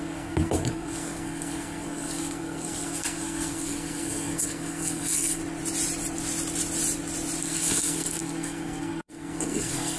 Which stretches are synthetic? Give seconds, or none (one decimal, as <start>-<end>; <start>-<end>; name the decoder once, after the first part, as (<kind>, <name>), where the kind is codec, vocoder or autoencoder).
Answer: 0.0-5.4 (codec, SNAC); 7.4-10.0